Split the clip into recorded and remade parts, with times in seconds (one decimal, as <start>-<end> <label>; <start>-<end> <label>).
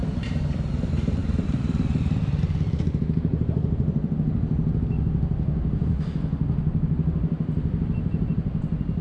0.0-9.0 recorded